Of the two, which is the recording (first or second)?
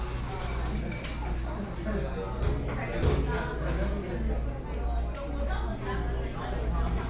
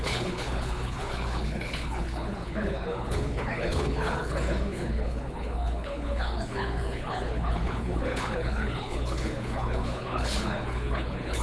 first